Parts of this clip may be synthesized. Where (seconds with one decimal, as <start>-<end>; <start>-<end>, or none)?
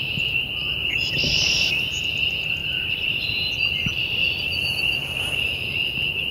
0.8-1.7; 2.6-3.5